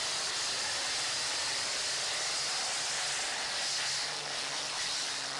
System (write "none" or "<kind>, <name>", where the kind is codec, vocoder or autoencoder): none